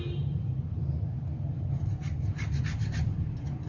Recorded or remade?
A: recorded